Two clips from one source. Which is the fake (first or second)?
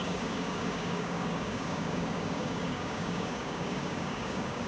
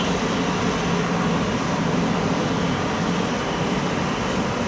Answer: first